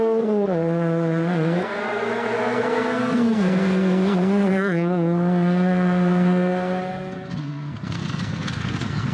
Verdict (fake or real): fake